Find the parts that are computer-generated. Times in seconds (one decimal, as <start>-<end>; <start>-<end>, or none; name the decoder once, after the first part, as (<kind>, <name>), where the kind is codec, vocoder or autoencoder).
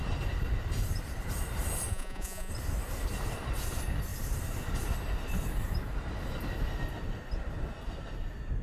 1.9-2.5 (vocoder, Vocos)